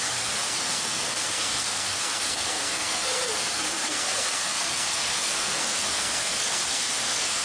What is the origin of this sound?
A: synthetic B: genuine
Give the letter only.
A